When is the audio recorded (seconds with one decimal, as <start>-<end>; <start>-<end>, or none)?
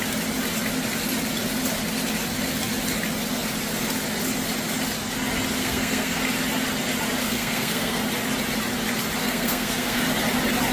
0.0-5.6; 6.2-7.2; 8.0-9.2; 10.0-10.7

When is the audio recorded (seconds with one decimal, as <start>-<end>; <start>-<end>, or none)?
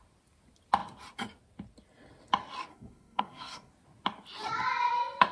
0.0-2.7; 3.7-5.3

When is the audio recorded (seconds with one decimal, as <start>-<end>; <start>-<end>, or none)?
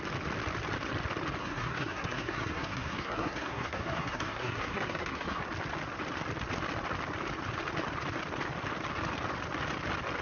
0.0-1.4; 5.4-10.2